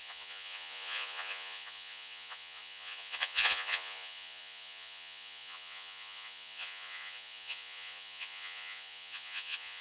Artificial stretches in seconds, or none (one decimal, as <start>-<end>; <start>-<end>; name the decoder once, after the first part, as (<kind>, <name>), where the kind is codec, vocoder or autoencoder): 0.0-9.8 (vocoder, Vocos)